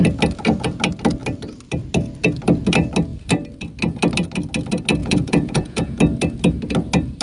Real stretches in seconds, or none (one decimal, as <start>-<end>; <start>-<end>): 0.0-5.0; 6.0-7.2